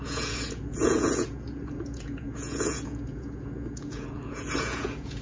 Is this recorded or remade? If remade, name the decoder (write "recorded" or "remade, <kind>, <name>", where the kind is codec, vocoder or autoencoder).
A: remade, vocoder, Vocos